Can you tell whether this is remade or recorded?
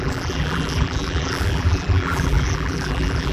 remade